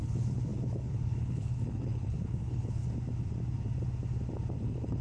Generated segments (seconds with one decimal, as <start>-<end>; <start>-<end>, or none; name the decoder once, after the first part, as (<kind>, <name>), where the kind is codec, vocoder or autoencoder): 0.0-2.8 (codec, HILCodec); 4.6-5.0